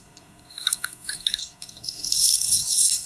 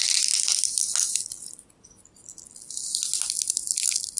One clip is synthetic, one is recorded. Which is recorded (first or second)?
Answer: second